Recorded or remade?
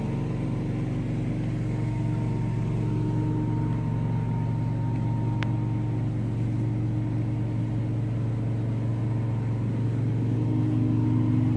recorded